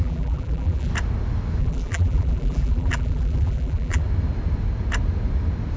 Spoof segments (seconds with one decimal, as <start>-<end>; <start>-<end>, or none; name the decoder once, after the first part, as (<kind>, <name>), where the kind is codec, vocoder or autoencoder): 0.0-0.9 (vocoder, BigVGAN v2); 1.6-4.0